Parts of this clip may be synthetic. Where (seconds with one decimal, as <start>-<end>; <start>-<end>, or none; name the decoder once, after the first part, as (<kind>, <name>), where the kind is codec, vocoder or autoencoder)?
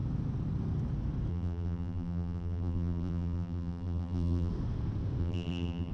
1.3-4.5 (vocoder, BigVGAN v2); 5.2-5.9